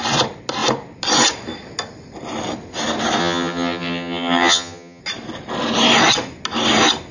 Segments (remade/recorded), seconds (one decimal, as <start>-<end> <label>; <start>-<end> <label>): 0.0-3.2 recorded; 3.2-5.0 remade; 5.0-7.1 recorded